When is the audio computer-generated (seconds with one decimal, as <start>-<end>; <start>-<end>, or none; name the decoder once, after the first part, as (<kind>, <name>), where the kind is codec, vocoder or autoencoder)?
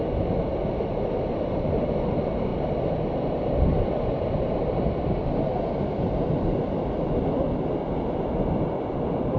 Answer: none